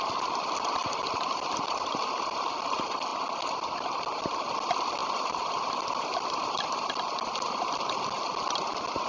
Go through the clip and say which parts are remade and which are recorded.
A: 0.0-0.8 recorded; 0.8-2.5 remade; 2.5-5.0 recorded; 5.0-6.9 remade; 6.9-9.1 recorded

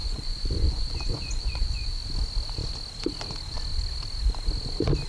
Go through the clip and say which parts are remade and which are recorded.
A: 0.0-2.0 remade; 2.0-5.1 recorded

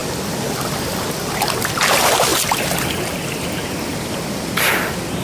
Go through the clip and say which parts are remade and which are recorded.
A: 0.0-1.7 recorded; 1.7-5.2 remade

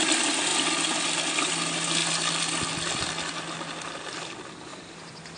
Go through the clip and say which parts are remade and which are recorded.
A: 0.0-5.4 recorded

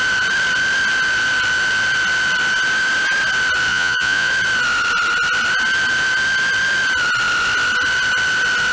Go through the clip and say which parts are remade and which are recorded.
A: 0.0-3.7 recorded; 3.7-4.3 remade; 4.3-8.7 recorded

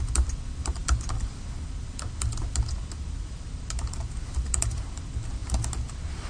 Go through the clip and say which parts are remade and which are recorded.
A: 0.0-6.3 recorded